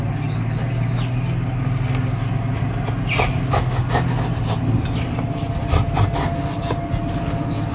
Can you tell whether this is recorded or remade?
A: recorded